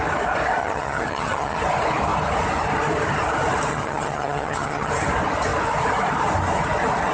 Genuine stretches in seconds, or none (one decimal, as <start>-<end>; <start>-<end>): 0.0-0.6; 1.6-3.7; 4.9-7.1